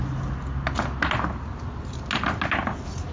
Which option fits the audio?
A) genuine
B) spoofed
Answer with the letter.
A